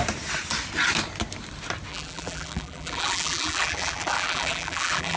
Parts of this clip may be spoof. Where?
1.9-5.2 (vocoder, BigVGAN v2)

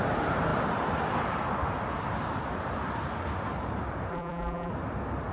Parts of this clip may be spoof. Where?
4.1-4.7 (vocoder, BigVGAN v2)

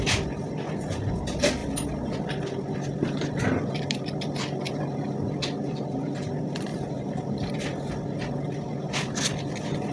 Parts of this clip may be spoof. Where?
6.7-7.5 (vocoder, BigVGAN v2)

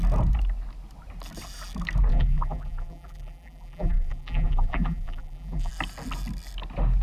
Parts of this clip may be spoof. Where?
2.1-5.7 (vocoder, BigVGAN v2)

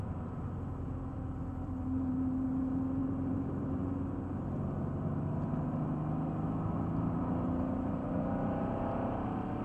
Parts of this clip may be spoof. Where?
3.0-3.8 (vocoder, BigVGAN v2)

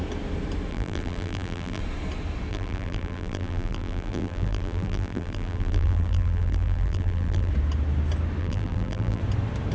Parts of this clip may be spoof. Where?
0.7-1.8 (vocoder, BigVGAN v2); 2.5-7.5; 8.4-9.2